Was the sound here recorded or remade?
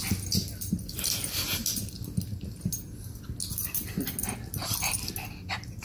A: recorded